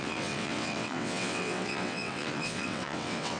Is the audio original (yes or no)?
no